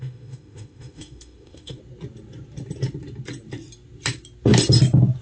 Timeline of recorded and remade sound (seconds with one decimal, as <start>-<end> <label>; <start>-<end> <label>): 0.0-1.8 remade; 1.8-5.2 recorded

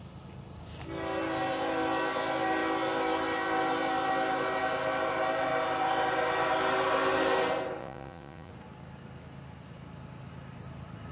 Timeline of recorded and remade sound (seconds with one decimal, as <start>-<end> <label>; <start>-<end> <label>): 0.0-7.8 recorded; 7.8-8.5 remade; 8.5-11.1 recorded

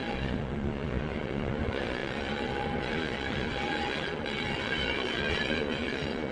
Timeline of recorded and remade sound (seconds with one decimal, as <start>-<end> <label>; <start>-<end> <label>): 0.0-6.3 remade

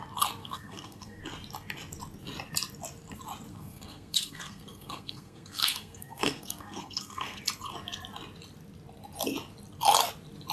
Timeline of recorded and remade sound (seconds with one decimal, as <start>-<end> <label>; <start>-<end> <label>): 0.0-0.4 recorded; 0.4-1.2 remade; 1.2-3.5 recorded; 3.5-7.4 remade; 7.4-10.5 recorded